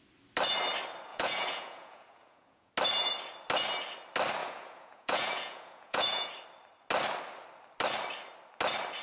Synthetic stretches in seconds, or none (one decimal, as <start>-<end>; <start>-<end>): 1.1-2.7; 4.4-6.3